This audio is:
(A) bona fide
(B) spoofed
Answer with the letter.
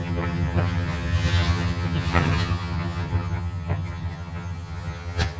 B